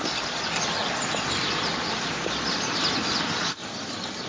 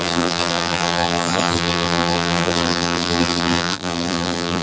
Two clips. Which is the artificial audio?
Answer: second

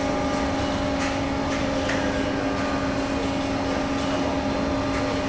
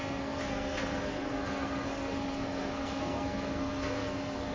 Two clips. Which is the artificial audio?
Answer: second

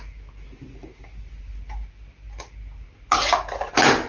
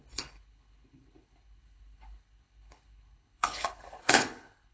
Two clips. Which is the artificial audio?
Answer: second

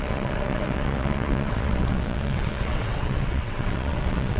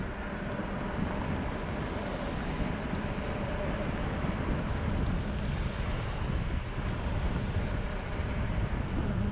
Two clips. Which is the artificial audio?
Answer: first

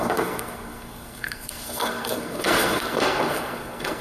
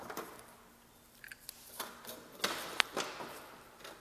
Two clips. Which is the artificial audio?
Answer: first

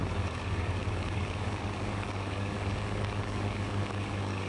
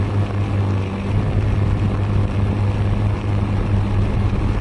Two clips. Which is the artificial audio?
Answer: first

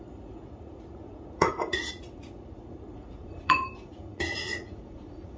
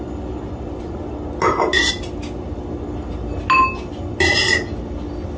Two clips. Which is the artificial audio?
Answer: first